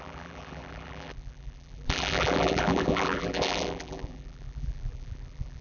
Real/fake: fake